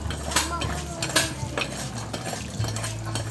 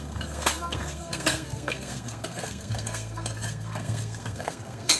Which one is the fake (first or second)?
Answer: second